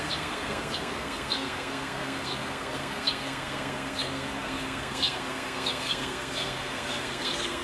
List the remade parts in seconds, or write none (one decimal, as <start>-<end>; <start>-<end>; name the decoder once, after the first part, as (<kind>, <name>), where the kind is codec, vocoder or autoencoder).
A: 0.0-7.6 (codec, SNAC)

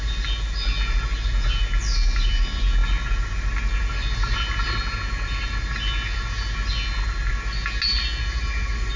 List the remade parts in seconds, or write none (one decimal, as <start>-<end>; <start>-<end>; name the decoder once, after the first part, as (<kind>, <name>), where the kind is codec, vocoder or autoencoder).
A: none

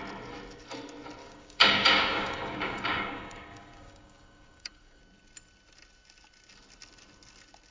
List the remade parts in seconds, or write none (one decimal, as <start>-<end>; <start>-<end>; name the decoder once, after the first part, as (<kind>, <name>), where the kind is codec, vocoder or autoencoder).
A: 1.2-5.0 (codec, DAC)

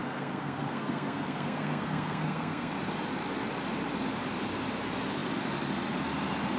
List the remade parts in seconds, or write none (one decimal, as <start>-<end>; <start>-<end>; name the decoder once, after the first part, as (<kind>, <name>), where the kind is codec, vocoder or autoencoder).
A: 0.0-2.7 (codec, SNAC)

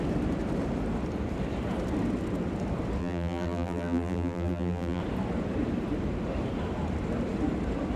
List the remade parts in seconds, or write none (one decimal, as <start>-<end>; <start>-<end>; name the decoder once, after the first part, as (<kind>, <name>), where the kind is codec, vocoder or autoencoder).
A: 3.0-5.0 (vocoder, BigVGAN v2)